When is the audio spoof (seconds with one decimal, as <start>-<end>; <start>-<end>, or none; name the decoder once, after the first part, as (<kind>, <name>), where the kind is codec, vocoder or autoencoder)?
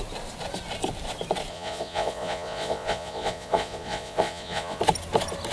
1.5-4.8 (vocoder, Vocos)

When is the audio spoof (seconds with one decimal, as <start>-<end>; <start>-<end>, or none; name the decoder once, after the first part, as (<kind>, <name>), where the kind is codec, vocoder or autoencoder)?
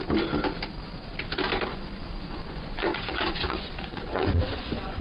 1.7-5.0 (vocoder, Vocos)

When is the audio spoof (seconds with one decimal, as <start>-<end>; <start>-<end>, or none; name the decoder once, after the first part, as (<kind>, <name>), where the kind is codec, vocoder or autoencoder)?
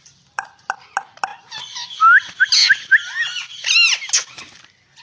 1.3-2.0 (vocoder, Vocos)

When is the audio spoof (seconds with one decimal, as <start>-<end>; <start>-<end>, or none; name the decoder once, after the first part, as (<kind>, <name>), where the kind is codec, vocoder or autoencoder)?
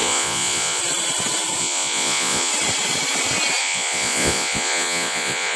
0.0-0.8 (vocoder, Vocos); 1.6-2.5; 3.6-5.6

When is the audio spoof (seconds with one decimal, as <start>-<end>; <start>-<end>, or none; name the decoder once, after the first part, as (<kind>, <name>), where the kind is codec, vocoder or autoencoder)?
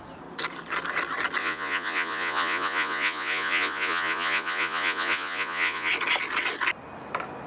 1.4-5.9 (vocoder, Vocos)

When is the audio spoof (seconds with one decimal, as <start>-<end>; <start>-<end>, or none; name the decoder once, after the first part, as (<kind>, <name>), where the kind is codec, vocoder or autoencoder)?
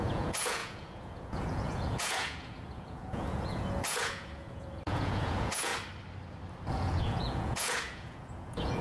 0.0-5.7 (vocoder, Vocos); 6.7-8.8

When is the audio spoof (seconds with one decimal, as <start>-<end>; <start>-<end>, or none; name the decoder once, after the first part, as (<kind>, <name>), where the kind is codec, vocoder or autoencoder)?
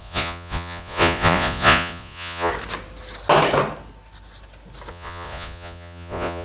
0.0-2.5 (vocoder, Vocos); 4.9-6.4